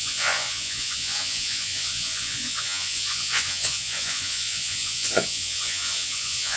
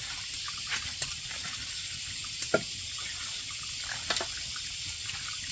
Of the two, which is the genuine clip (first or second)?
second